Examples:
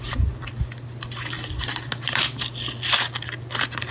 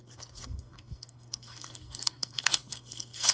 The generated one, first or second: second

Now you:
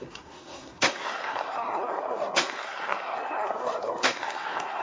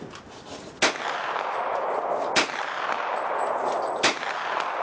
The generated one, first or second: first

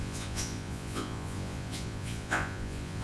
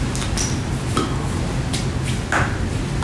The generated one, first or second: first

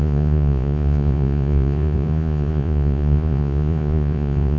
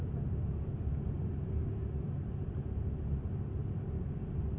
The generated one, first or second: first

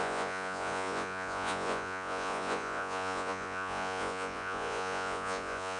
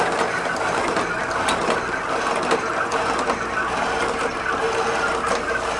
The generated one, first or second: first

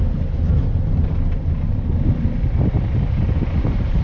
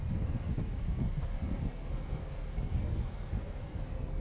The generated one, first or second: second